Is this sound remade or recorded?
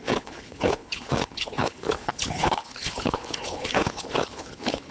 remade